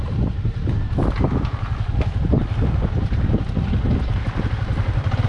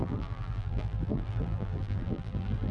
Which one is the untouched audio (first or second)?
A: first